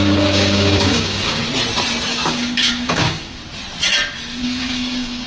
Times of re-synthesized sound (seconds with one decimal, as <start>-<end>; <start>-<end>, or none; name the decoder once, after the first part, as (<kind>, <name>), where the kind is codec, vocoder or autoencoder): 0.0-1.4 (codec, DAC); 2.1-3.4; 4.4-5.3